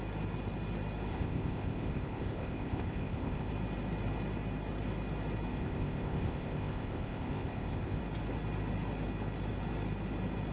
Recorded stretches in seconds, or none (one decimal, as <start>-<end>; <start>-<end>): 0.0-1.1; 3.5-5.5; 8.0-10.5